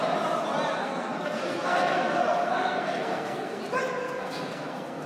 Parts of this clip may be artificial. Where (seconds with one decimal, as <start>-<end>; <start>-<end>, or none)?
0.8-3.6; 4.0-5.1